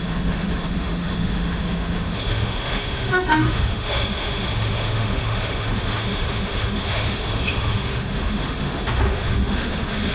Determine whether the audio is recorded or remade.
remade